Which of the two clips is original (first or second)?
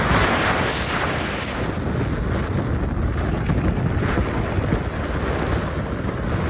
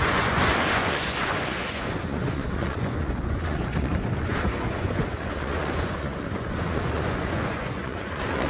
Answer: first